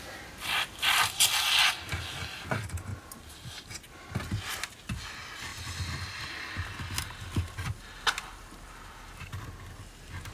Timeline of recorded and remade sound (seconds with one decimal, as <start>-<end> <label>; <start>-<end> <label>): 0.0-10.3 recorded